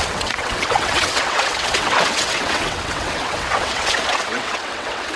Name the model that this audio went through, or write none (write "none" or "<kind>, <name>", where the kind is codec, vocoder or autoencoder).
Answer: vocoder, WaveNeXt